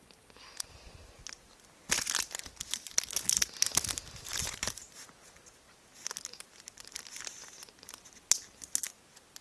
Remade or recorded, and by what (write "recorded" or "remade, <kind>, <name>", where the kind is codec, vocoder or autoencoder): recorded